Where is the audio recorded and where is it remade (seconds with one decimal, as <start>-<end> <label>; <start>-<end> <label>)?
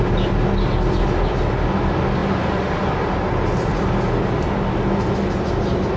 0.0-6.0 recorded